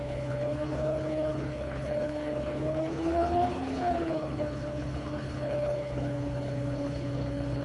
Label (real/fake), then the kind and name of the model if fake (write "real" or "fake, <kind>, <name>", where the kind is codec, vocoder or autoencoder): fake, codec, HILCodec